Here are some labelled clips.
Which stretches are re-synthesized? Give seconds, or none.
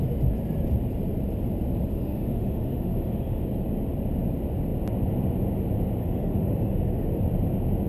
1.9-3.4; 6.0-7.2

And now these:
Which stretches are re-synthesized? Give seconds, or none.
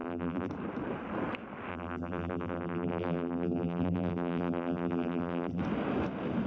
0.0-0.5; 1.7-5.6